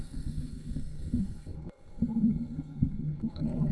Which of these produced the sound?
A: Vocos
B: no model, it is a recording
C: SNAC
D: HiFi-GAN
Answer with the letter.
C